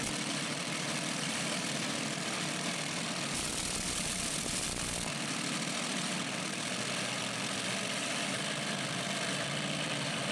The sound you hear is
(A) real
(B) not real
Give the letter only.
B